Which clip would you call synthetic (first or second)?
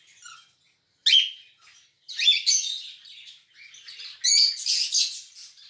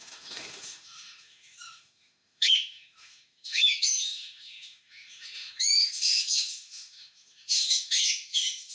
second